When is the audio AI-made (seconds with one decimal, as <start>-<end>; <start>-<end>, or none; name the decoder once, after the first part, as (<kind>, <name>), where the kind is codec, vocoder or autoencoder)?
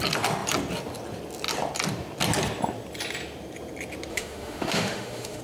4.1-5.4 (autoencoder, DAC-VAE)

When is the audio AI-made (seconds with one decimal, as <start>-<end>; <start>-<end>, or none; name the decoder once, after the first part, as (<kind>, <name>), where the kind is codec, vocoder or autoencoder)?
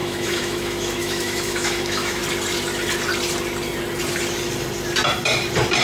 0.0-2.2 (autoencoder, DAC-VAE)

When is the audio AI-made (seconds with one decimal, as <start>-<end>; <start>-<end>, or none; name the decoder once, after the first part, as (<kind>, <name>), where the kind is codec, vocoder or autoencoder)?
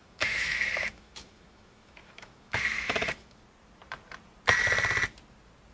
0.0-3.4 (autoencoder, DAC-VAE)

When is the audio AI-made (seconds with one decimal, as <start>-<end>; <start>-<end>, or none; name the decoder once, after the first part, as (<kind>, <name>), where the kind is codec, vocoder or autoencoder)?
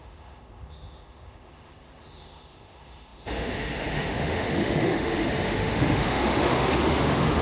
0.0-7.4 (autoencoder, DAC-VAE)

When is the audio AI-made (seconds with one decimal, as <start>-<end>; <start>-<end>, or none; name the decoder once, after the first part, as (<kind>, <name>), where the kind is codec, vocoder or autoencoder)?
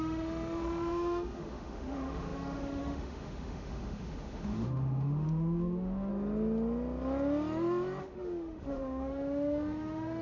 0.0-6.1 (autoencoder, DAC-VAE); 8.0-10.2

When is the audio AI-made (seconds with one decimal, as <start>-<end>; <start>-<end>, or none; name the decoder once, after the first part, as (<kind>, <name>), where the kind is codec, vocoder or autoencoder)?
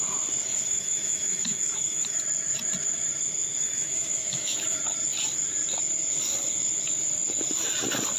0.5-2.2 (autoencoder, DAC-VAE); 3.6-4.8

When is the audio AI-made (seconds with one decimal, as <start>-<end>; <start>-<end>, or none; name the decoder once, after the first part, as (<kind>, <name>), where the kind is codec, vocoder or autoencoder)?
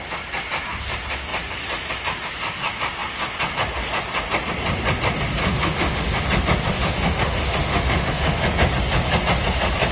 5.4-6.2 (autoencoder, DAC-VAE); 6.7-8.4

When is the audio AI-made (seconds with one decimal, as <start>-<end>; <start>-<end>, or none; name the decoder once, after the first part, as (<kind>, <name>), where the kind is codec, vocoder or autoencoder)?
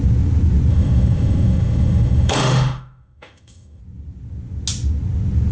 0.7-3.8 (autoencoder, DAC-VAE)